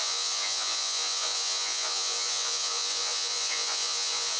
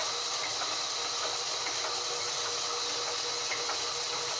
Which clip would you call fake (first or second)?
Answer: first